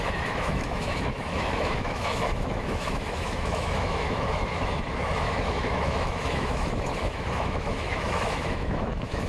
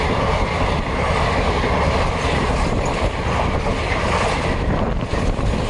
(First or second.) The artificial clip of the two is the first